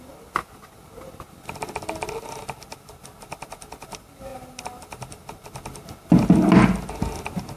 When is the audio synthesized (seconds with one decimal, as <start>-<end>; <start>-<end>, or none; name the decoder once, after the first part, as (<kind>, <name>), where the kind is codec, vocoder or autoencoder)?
none